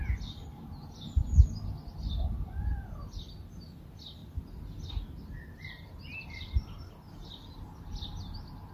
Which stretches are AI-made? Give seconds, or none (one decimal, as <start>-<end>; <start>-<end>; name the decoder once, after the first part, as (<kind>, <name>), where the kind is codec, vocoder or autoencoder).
none